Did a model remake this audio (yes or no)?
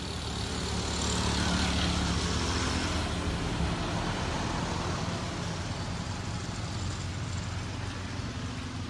no